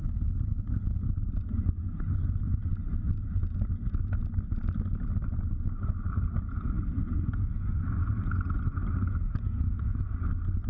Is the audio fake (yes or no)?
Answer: no